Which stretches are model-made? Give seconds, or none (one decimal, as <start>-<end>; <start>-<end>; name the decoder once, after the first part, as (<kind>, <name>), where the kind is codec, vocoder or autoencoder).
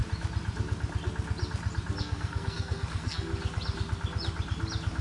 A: 2.0-3.3 (codec, SNAC)